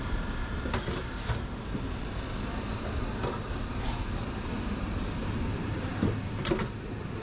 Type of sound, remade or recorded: remade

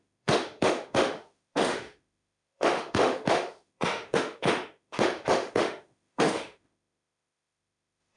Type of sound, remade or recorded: remade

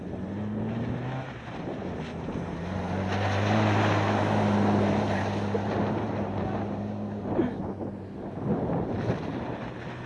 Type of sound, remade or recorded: recorded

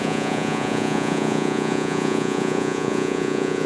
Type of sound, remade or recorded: remade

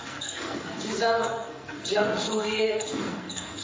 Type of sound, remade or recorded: remade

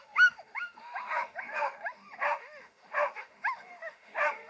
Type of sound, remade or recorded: remade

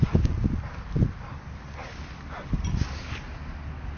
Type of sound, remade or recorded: recorded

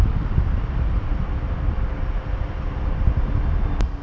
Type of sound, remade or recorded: recorded